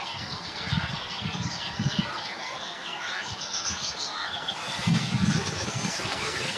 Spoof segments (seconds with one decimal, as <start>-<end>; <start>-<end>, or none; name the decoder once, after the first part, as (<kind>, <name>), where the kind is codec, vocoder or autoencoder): 0.0-6.6 (codec, SNAC)